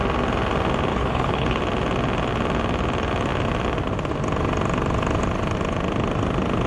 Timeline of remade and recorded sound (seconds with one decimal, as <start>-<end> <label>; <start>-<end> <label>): 0.0-0.9 recorded; 0.9-1.6 remade; 1.6-6.7 recorded